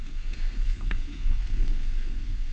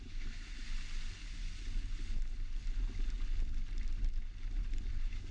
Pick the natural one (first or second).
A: second